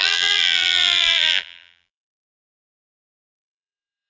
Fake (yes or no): yes